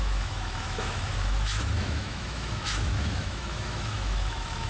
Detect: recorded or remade remade